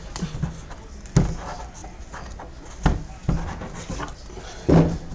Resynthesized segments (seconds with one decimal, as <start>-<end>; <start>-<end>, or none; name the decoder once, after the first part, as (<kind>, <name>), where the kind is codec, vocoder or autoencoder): none

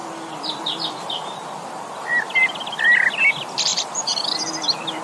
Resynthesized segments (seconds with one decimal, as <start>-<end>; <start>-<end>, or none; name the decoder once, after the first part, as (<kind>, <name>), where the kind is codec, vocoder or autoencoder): 3.7-4.2 (vocoder, BigVGAN v2)

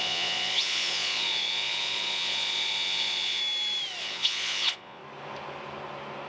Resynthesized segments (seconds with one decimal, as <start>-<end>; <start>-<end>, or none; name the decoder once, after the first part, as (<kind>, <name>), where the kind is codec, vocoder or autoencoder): 0.0-3.4 (vocoder, Vocos); 4.0-5.0

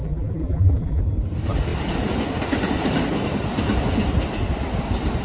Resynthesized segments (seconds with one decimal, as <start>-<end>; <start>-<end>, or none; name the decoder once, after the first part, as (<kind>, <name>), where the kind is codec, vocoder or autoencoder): 0.0-1.0 (vocoder, BigVGAN v2)

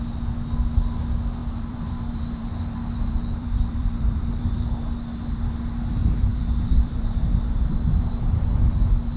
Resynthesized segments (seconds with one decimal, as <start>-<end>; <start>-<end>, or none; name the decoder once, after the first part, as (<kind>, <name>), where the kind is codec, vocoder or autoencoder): 1.4-4.4 (vocoder, BigVGAN v2); 6.0-8.1